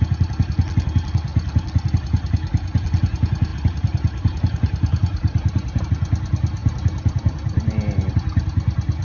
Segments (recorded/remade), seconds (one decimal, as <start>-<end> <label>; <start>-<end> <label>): 0.0-3.5 recorded; 3.5-5.8 remade; 5.8-6.6 recorded; 6.6-8.1 remade; 8.1-9.0 recorded